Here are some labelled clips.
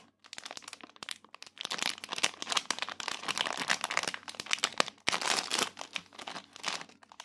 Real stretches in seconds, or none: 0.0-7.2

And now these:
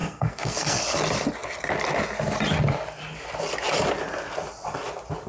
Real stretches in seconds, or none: 0.8-5.3

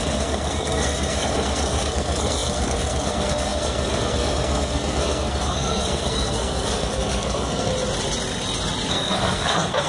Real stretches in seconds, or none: 7.7-8.9

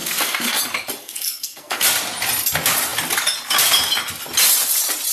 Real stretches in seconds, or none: 0.6-1.0; 1.8-5.1

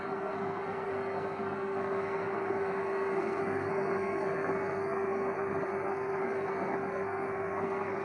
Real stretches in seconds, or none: none

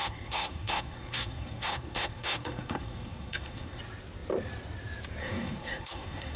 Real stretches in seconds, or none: 3.8-5.2

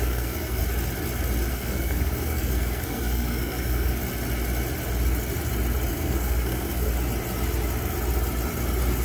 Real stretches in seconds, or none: 0.6-1.5; 4.0-5.9; 6.9-9.0

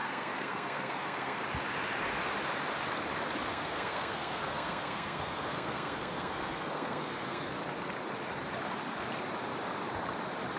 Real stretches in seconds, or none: 1.4-3.5; 7.6-10.6